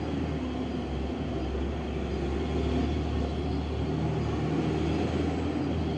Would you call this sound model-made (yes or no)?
no